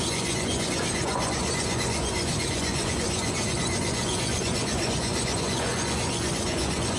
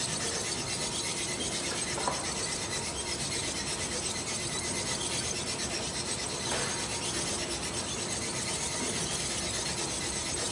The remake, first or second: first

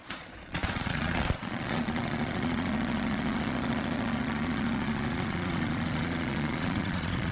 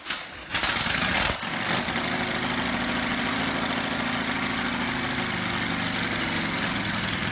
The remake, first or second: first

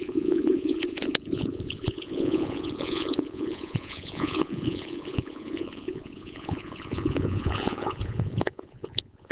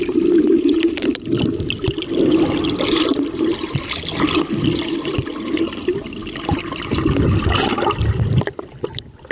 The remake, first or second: first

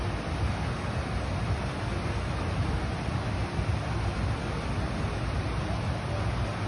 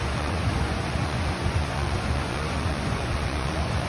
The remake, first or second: second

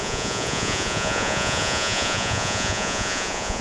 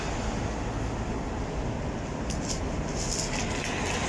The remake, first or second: first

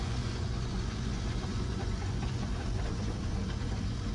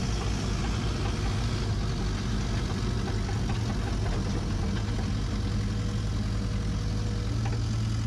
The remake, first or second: first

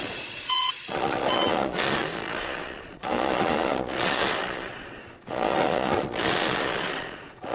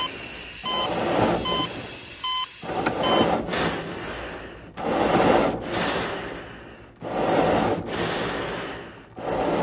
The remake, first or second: first